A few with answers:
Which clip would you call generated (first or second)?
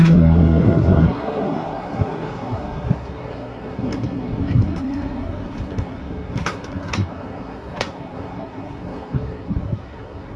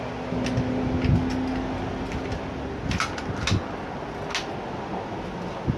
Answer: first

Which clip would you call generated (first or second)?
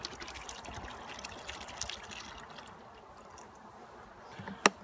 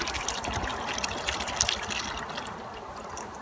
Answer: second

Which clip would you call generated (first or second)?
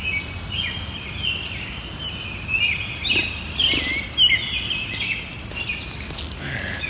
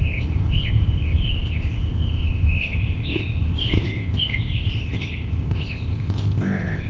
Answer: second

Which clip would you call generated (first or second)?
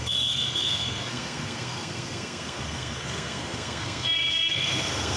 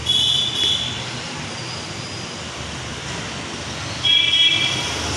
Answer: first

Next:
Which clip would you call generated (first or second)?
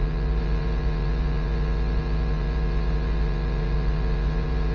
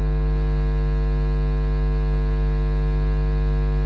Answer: first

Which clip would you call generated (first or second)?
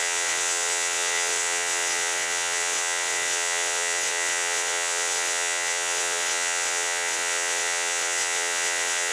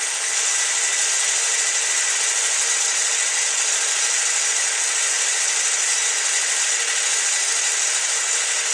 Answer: first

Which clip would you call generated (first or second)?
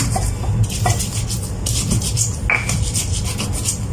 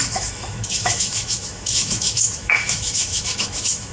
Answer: second